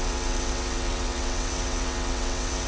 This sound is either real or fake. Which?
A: fake